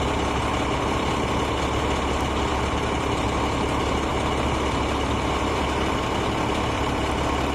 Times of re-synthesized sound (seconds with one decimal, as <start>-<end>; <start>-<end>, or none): 2.5-5.1